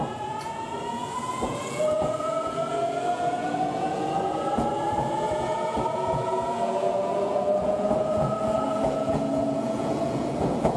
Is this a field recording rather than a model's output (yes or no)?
no